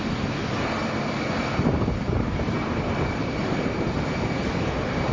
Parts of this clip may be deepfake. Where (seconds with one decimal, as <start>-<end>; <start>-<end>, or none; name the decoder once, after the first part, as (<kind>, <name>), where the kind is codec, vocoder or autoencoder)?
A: 1.4-4.5 (vocoder, BigVGAN v2)